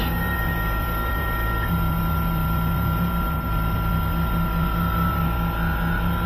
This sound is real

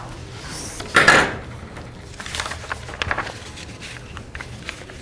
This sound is real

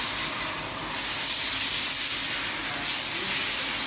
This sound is real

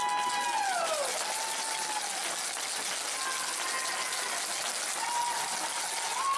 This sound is real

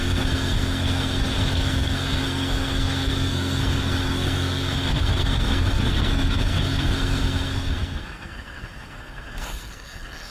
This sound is fake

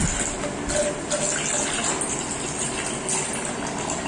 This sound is real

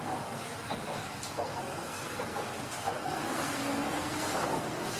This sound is fake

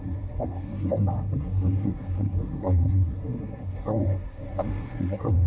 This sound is fake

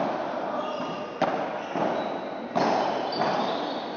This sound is real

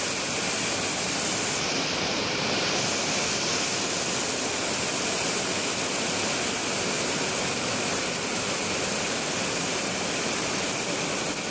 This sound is real